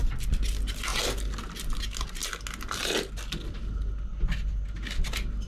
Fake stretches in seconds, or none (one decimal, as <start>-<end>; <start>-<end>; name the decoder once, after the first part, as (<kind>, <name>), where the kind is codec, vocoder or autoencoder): none